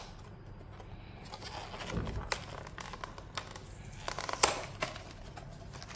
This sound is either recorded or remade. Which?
recorded